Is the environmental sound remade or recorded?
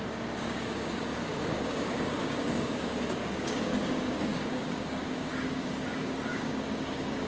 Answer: remade